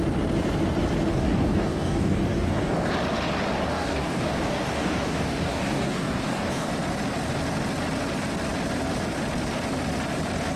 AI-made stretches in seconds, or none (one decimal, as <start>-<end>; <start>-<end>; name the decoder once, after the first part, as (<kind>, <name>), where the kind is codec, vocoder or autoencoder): 1.1-2.9 (codec, DAC); 3.7-6.7